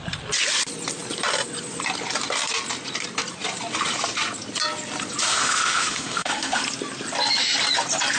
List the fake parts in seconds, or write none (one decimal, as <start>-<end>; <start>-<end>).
5.3-6.6